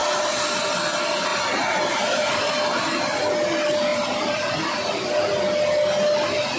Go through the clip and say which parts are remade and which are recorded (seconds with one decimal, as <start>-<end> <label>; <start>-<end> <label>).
0.0-1.3 recorded; 1.3-2.5 remade; 2.5-3.9 recorded; 3.9-4.5 remade; 4.5-6.6 recorded